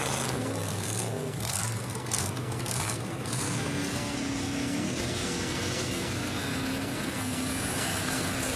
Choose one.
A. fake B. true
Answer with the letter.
A